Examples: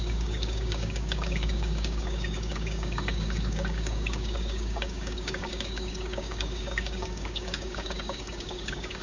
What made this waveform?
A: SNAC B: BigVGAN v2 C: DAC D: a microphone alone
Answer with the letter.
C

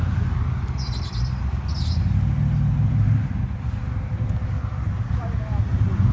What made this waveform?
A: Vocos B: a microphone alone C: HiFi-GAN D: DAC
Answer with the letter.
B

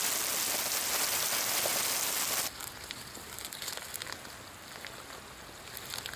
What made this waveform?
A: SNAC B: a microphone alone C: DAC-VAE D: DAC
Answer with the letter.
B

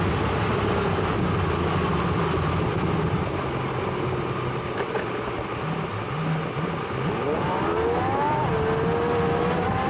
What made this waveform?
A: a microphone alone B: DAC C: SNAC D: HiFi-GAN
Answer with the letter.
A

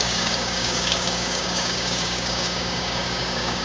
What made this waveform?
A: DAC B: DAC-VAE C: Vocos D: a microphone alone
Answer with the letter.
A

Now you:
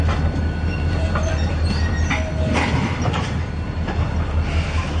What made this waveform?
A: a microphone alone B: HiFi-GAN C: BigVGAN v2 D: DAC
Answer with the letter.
A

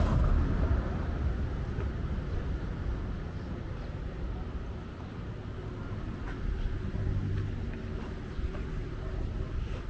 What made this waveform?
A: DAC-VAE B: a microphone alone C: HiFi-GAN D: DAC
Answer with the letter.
B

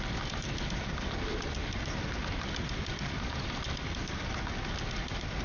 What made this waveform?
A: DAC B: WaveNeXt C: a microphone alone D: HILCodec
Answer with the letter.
C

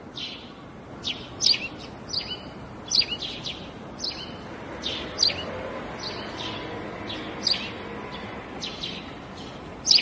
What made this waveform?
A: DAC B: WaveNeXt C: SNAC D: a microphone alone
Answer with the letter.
D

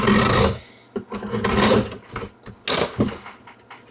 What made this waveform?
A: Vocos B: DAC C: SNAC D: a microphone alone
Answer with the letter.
D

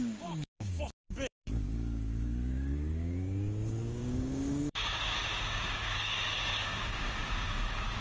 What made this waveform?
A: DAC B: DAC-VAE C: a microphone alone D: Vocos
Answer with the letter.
A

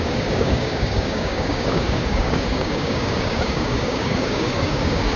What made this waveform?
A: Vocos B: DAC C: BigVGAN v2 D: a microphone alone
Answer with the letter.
B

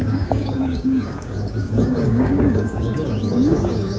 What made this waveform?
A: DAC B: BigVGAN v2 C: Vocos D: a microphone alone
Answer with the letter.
A